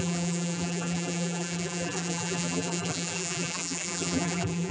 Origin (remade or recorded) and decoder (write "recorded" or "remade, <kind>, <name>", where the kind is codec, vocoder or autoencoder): remade, vocoder, BigVGAN v2